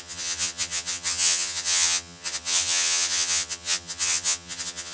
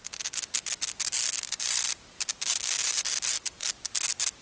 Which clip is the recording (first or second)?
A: second